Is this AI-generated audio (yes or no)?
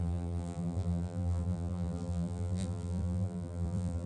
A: yes